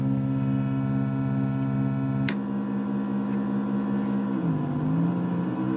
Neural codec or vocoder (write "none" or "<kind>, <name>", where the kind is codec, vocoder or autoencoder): none